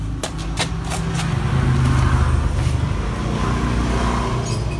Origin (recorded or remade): recorded